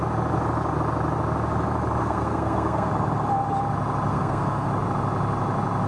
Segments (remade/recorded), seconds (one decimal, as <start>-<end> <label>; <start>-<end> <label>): 0.0-2.0 recorded; 2.0-2.9 remade; 2.9-4.1 recorded; 4.1-4.7 remade; 4.7-5.9 recorded